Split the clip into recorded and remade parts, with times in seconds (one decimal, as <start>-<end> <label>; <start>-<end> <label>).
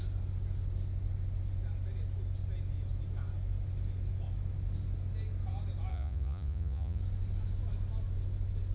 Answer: 0.0-5.9 recorded; 5.9-7.0 remade; 7.0-8.7 recorded